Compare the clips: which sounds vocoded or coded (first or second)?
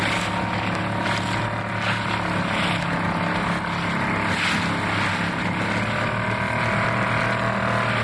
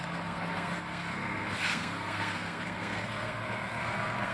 second